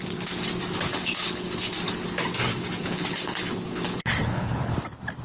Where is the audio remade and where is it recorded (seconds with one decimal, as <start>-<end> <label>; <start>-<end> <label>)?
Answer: 0.0-0.9 recorded; 0.9-1.7 remade; 1.7-2.5 recorded; 2.5-4.7 remade; 4.7-5.2 recorded